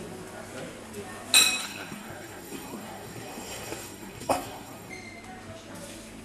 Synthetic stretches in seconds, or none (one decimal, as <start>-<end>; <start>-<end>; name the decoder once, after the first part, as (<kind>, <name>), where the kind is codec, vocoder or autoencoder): 1.6-4.9 (codec, SNAC)